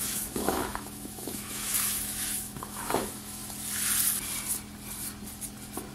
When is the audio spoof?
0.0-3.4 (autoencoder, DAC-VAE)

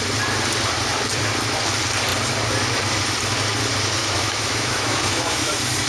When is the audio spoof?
4.0-5.5 (autoencoder, DAC-VAE)

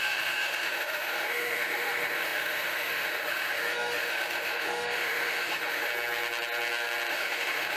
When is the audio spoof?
0.0-5.9 (autoencoder, DAC-VAE); 7.1-7.8

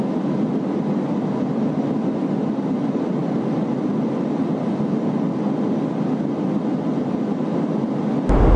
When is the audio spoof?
none

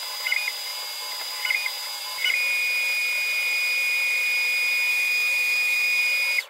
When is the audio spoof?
4.9-6.0 (autoencoder, DAC-VAE)

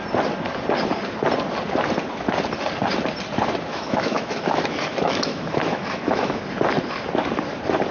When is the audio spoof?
3.7-6.4 (autoencoder, DAC-VAE)

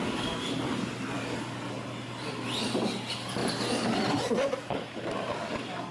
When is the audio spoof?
none

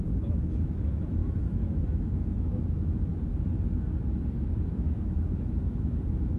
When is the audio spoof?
0.0-3.1 (autoencoder, DAC-VAE); 4.4-6.4